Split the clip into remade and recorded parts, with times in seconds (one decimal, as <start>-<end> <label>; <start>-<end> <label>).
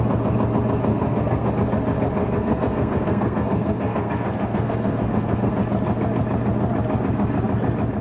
0.0-0.9 recorded; 0.9-1.5 remade; 1.5-2.2 recorded; 2.2-5.5 remade; 5.5-8.0 recorded